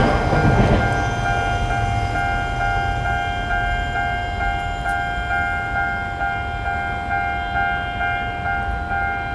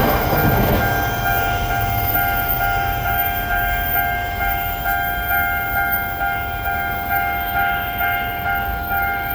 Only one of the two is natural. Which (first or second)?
first